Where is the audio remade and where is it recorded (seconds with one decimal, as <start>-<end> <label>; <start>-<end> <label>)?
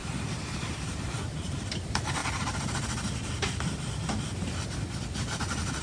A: 0.0-2.2 remade; 2.2-5.8 recorded